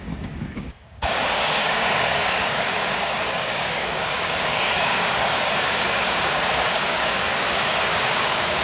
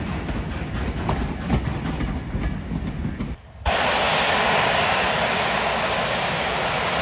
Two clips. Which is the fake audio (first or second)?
first